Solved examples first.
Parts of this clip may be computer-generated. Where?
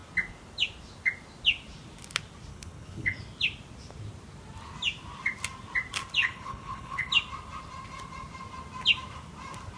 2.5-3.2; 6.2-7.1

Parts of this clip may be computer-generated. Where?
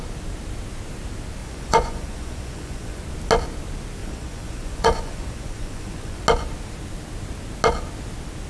1.4-3.0; 4.0-6.2